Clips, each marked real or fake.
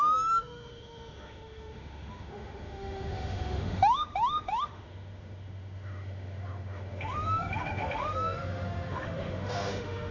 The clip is fake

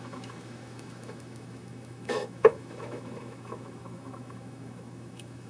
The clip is fake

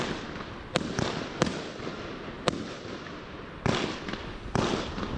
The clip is real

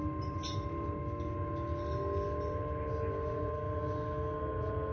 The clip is real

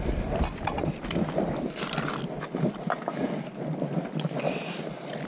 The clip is real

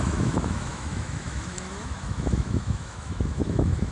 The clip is fake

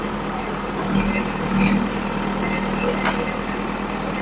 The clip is real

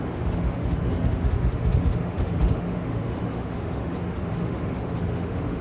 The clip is fake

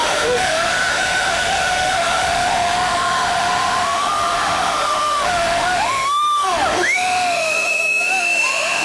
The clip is fake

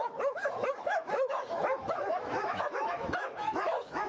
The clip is fake